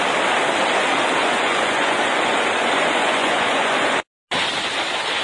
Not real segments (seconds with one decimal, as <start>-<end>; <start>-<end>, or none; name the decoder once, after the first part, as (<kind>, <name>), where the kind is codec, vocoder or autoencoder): 1.2-4.0 (vocoder, Vocos)